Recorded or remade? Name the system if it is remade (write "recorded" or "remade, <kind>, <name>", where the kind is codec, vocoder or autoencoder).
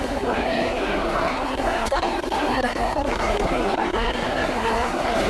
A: remade, codec, SNAC